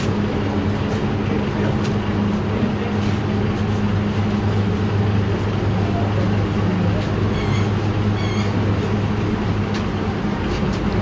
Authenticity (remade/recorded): recorded